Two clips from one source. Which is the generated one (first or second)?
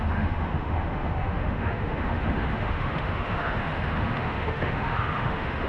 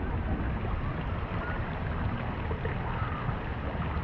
first